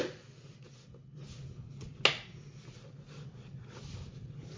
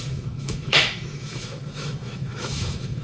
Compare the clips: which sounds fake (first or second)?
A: second